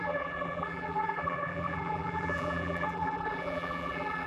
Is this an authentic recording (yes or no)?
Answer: no